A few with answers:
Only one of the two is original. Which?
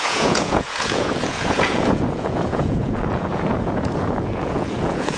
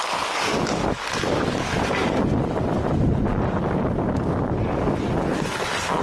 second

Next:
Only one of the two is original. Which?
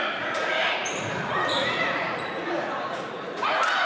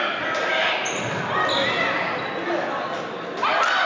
second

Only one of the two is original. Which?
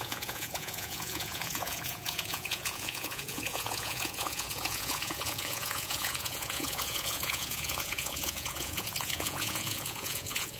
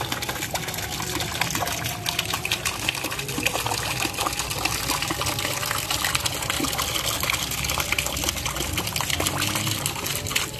second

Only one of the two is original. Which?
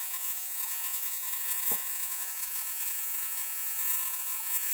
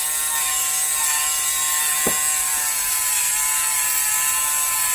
second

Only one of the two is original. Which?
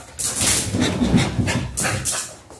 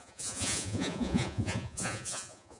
first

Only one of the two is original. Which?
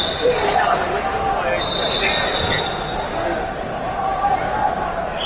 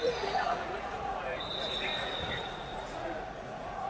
first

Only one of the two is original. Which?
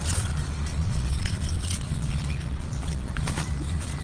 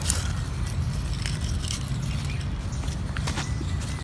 second